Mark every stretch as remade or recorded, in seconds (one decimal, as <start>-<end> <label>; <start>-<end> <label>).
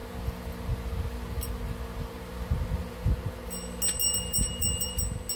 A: 0.0-4.0 recorded; 4.0-4.9 remade; 4.9-5.4 recorded